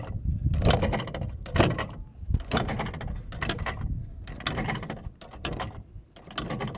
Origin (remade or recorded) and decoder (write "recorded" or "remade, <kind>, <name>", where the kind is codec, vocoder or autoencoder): recorded